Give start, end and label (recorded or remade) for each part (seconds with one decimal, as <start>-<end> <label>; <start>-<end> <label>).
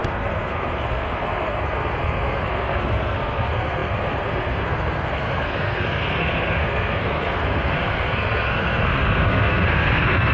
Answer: 0.0-10.3 remade